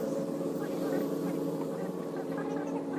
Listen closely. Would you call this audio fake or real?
fake